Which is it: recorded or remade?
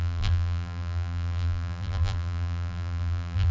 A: remade